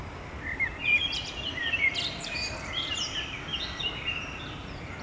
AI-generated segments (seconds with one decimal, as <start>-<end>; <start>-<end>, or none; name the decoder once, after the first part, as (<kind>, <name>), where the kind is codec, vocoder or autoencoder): 0.0-3.0 (vocoder, BigVGAN v2); 3.5-4.1